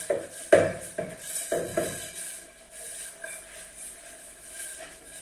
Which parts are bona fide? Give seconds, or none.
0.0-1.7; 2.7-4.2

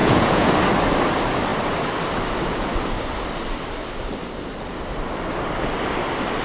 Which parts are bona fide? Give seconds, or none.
0.5-6.4

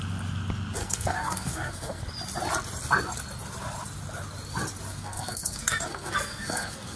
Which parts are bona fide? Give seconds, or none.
0.0-0.8; 2.0-4.9

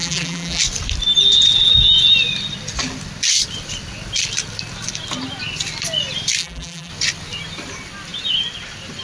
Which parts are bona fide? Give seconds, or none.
0.6-6.4; 6.9-9.0

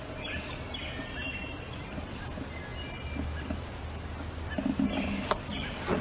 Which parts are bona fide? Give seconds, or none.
0.0-6.0

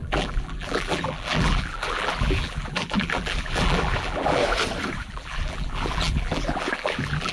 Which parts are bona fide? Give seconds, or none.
4.4-5.1